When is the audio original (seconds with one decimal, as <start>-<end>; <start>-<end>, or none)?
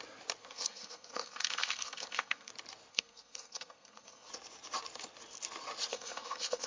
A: 0.0-0.4; 2.5-2.9; 4.3-5.9